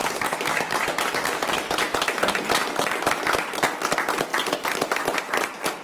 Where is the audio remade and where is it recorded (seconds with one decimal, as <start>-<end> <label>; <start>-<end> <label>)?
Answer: 0.0-1.8 remade; 1.8-5.8 recorded